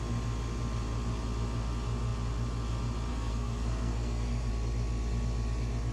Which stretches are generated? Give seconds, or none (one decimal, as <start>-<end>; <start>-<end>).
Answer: 3.1-4.5